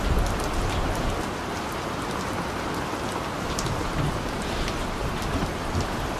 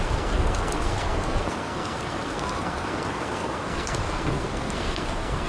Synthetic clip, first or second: second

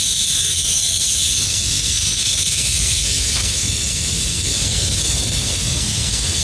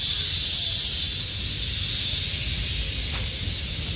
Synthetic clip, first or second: first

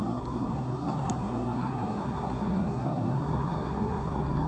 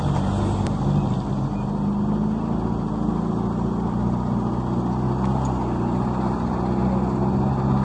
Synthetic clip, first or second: first